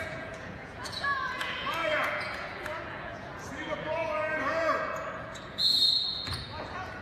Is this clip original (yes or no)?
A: no